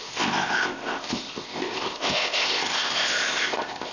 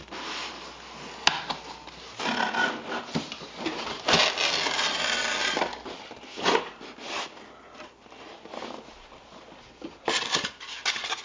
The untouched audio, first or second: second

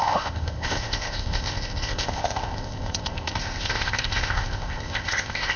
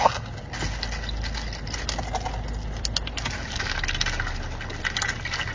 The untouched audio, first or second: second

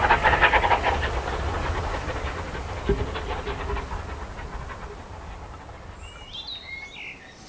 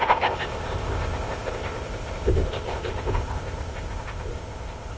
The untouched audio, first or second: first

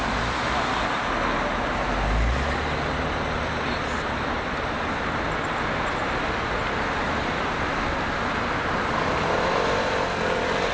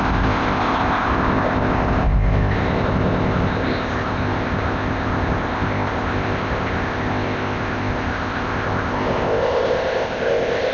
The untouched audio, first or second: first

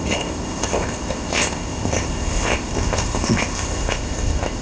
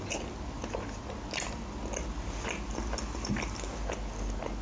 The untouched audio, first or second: second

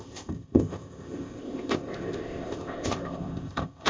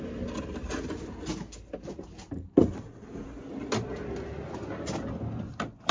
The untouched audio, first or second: second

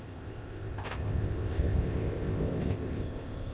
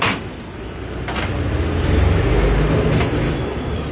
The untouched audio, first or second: second